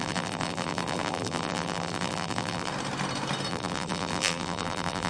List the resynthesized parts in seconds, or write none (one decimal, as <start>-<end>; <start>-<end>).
0.0-2.7; 3.5-5.1